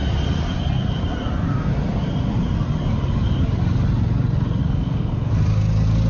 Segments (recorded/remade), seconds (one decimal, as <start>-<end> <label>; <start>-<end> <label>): 0.0-4.6 recorded; 4.6-5.3 remade; 5.3-6.1 recorded